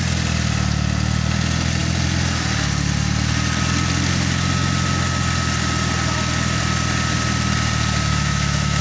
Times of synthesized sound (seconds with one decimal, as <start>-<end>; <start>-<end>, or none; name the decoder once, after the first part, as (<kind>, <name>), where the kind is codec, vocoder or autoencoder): 8.1-8.8 (autoencoder, DAC-VAE)